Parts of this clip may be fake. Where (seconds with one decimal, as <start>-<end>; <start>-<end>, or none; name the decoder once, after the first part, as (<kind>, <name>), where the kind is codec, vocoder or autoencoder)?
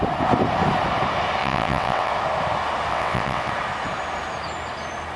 1.4-2.1 (vocoder, WaveNeXt); 2.9-3.5